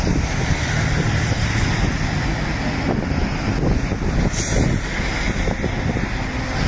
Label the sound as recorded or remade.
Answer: recorded